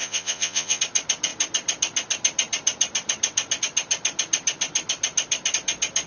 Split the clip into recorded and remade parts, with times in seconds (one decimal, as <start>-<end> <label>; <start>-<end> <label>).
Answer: 0.0-0.8 remade; 0.8-6.1 recorded